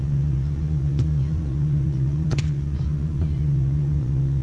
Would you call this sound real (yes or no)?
no